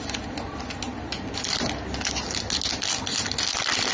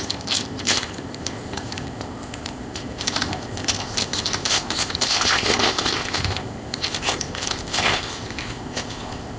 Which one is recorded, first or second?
first